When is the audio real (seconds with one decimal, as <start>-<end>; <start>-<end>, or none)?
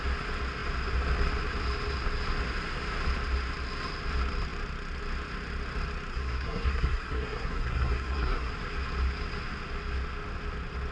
0.0-6.1; 8.5-10.9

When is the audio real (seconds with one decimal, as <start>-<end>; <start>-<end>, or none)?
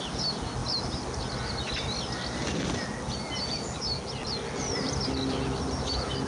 0.0-6.3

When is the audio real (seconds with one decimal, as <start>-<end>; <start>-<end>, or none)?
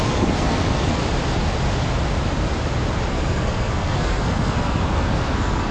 1.0-3.1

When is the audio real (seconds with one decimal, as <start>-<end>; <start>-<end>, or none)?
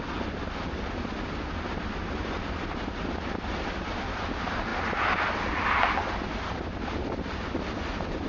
0.0-8.3